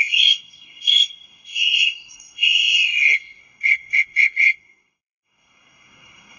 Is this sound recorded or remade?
remade